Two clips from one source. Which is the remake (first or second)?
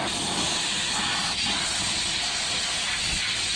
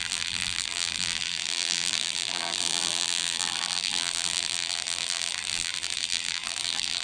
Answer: second